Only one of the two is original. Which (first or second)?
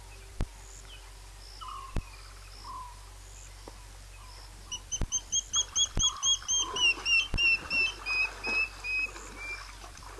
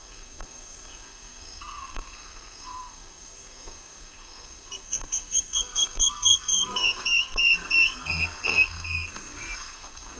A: first